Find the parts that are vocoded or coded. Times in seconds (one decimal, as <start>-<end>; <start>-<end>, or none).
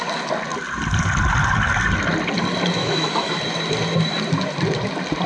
2.8-3.4